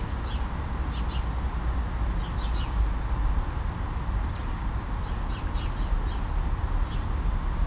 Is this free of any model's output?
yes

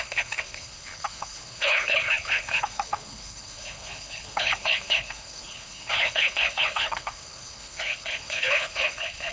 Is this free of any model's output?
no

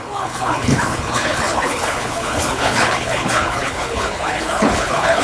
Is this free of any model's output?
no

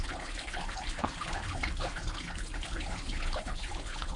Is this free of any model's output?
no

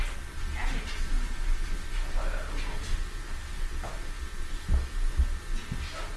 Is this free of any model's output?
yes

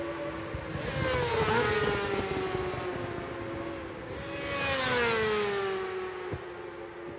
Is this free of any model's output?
yes